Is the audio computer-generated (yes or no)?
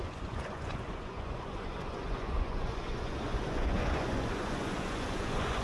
yes